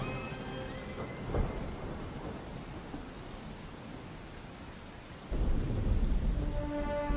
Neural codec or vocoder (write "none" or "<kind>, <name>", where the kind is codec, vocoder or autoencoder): none